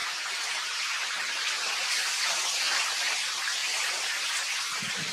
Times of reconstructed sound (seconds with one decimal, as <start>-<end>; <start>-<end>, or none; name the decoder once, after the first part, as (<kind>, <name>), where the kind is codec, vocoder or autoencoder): 0.0-1.1 (vocoder, BigVGAN v2); 3.6-4.1